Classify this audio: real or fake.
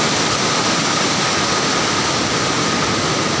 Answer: real